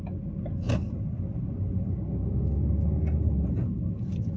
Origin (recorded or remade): recorded